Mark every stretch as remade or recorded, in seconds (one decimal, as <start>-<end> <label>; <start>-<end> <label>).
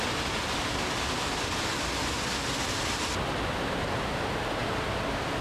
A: 0.0-5.4 recorded